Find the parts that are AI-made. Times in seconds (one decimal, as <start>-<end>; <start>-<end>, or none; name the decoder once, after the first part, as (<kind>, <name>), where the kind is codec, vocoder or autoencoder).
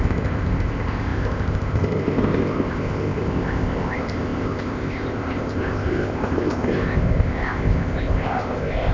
0.0-8.9 (codec, ZipCodec)